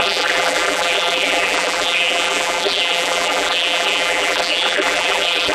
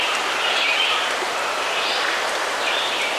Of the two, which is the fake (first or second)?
first